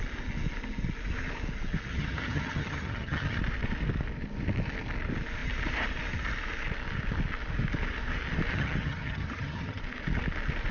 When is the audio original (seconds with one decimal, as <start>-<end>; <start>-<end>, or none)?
0.0-1.9; 3.4-8.5; 9.8-10.7